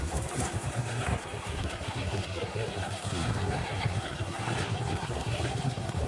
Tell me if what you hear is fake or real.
fake